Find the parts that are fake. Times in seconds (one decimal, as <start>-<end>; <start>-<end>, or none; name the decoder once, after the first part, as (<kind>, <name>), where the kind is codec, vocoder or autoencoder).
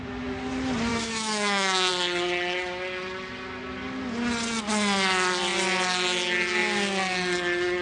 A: 0.9-1.9 (autoencoder, DAC-VAE)